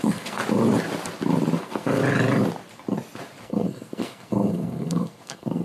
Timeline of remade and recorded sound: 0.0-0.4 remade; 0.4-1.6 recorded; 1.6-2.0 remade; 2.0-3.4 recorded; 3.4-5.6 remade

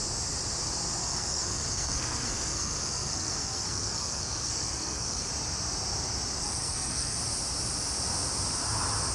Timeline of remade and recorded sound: 0.0-1.0 recorded; 1.0-5.3 remade; 5.3-6.4 recorded; 6.4-7.2 remade; 7.2-9.1 recorded

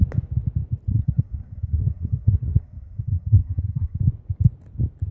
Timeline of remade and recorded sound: 0.0-0.9 recorded; 0.9-4.0 remade; 4.0-5.1 recorded